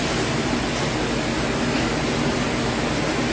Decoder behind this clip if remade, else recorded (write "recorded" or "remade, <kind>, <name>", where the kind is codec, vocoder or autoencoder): recorded